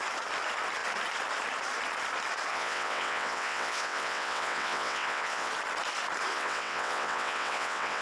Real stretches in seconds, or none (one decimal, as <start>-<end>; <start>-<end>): 0.0-2.5; 5.5-6.3